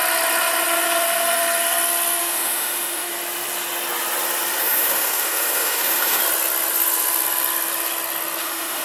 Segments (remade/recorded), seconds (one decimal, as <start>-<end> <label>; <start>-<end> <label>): 0.0-2.2 recorded; 2.2-3.1 remade; 3.1-4.6 recorded; 4.6-6.2 remade; 6.2-8.4 recorded; 8.4-8.8 remade